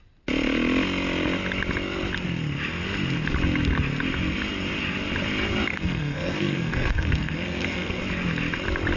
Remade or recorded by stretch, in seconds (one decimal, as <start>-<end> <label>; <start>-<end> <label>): 0.0-5.7 recorded; 5.7-8.0 remade; 8.0-9.0 recorded